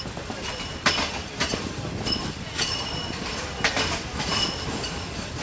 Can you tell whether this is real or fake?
real